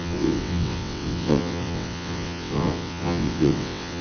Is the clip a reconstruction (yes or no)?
yes